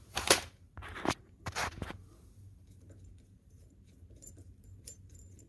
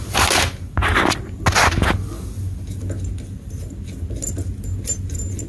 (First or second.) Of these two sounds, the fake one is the first